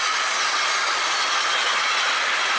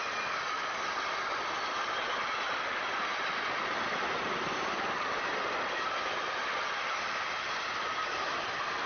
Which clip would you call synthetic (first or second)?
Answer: second